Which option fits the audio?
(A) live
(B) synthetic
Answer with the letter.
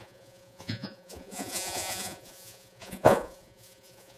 B